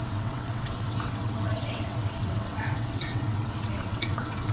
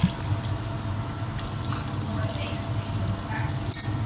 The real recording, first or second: second